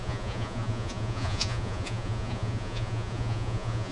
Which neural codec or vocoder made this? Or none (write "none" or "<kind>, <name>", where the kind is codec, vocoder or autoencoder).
vocoder, Vocos